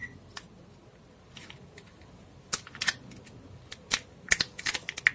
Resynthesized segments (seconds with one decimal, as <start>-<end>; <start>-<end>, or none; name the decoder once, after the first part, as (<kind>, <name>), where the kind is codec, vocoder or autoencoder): none